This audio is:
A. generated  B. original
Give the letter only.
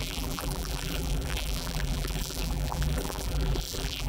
A